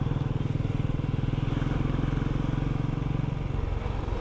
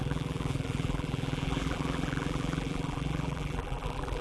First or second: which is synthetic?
second